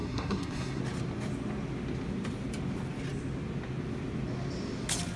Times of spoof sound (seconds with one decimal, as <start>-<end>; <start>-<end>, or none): 0.0-0.8